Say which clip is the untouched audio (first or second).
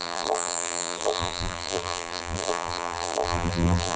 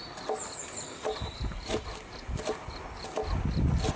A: second